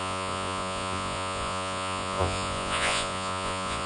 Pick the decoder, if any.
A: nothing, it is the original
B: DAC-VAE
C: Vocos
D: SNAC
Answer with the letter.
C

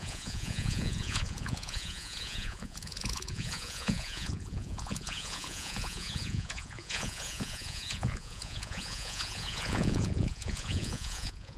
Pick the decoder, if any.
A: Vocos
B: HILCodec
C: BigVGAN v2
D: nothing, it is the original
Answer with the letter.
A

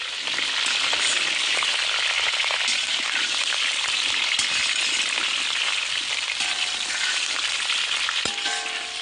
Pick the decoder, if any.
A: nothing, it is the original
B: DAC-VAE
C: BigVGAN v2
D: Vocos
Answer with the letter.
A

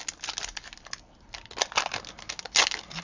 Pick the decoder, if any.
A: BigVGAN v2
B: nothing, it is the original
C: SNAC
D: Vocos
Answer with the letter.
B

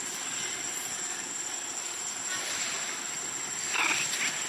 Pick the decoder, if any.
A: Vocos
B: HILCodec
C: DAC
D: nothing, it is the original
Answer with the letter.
D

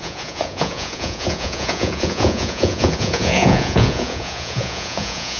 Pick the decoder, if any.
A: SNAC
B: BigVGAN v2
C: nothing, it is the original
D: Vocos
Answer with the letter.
D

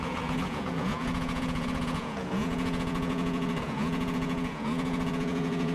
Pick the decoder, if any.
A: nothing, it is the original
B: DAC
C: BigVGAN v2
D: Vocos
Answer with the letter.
D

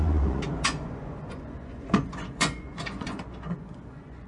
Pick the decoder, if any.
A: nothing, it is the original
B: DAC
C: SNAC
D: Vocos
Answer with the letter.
D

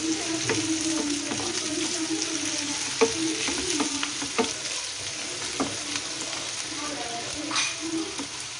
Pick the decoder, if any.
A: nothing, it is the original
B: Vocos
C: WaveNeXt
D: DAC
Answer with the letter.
A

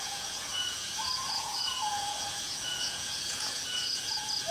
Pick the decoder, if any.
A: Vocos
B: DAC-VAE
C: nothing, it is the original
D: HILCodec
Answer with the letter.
A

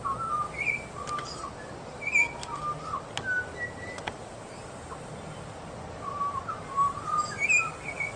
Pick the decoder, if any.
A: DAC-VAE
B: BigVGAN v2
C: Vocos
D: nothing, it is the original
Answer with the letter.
D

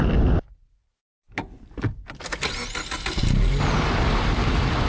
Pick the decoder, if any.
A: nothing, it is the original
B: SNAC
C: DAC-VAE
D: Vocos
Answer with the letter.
A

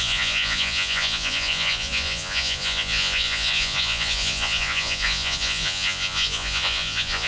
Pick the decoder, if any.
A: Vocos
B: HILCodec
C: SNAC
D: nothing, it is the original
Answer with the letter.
A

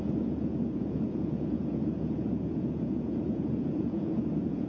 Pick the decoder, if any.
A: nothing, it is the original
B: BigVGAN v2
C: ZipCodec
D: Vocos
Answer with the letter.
D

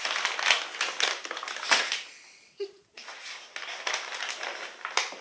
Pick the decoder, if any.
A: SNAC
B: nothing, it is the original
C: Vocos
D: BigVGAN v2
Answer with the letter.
B